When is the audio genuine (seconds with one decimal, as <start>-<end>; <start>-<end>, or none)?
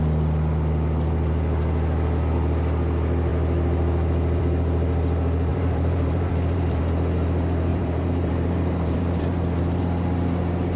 0.0-5.5; 6.8-7.7; 9.8-10.8